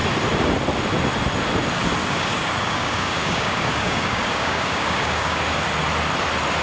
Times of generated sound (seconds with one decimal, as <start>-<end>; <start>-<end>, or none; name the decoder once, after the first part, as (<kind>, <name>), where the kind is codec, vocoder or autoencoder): 2.0-5.4 (codec, DAC)